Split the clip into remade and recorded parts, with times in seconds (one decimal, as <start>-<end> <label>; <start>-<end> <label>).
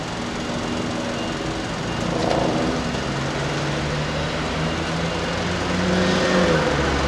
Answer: 0.0-2.2 recorded; 2.2-2.8 remade; 2.8-7.1 recorded